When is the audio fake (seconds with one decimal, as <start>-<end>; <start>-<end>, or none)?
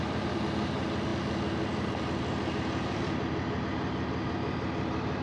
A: none